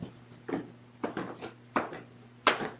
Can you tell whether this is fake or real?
real